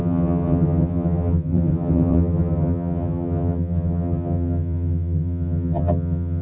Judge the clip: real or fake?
fake